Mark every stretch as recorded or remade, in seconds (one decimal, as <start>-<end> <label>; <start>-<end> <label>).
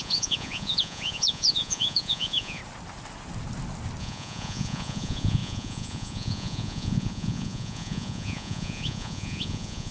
0.0-2.6 remade; 2.6-4.0 recorded; 4.0-9.9 remade